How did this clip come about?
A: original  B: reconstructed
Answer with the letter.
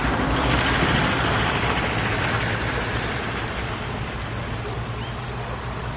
A